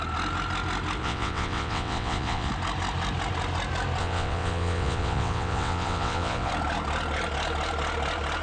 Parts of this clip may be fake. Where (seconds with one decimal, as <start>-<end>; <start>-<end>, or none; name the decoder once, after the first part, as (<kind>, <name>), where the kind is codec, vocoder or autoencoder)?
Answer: 1.0-2.5 (vocoder, WaveNeXt); 4.0-6.5